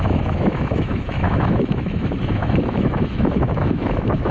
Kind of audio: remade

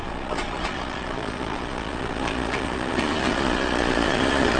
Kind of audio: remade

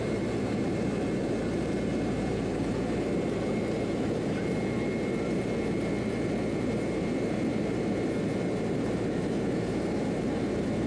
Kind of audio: remade